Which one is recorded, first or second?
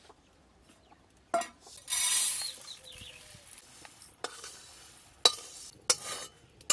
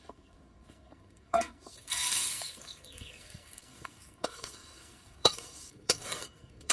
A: first